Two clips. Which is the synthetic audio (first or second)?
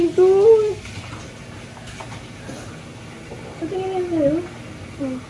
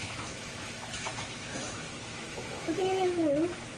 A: second